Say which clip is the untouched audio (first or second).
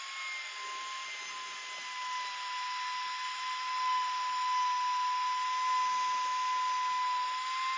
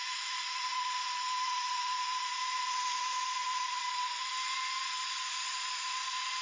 first